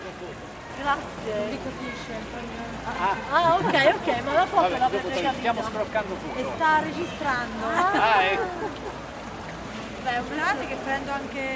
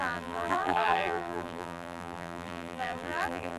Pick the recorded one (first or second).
first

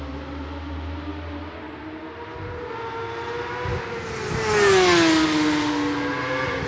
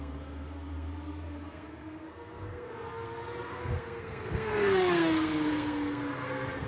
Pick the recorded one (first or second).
first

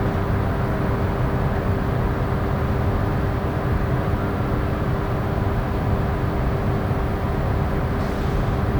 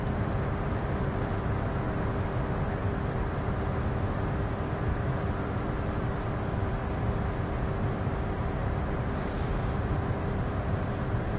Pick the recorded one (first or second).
first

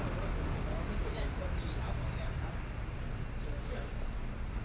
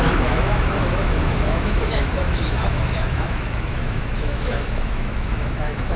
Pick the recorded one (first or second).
first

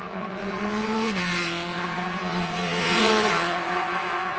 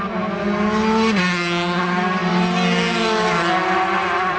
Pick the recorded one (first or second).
second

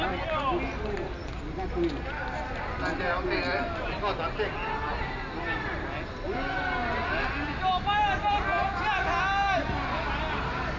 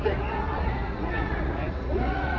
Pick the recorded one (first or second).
first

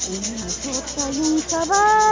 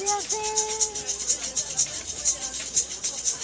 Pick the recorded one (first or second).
first